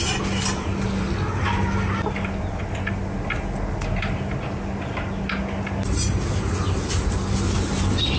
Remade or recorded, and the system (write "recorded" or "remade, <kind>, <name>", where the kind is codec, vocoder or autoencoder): recorded